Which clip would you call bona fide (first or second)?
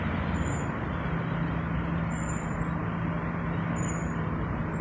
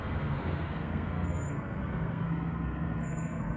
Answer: first